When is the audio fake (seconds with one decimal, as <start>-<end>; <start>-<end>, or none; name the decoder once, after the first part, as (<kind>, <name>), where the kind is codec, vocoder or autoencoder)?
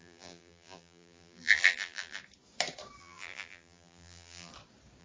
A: 0.0-2.2 (vocoder, BigVGAN v2); 3.0-4.5